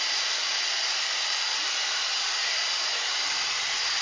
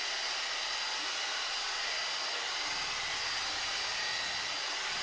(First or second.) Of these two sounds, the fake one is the first